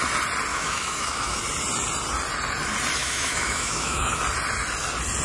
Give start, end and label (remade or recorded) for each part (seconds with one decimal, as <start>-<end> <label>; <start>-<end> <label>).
0.0-0.5 recorded; 0.5-1.4 remade; 1.4-3.0 recorded; 3.0-4.2 remade; 4.2-5.2 recorded

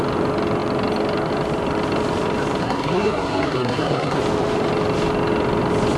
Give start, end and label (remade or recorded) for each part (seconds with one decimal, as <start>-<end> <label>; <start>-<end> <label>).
0.0-2.6 recorded; 2.6-4.2 remade; 4.2-6.0 recorded

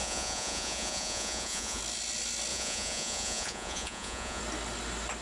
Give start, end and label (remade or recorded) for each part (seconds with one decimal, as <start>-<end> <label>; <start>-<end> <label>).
0.0-1.8 remade; 1.8-2.5 recorded; 2.5-4.4 remade; 4.4-5.2 recorded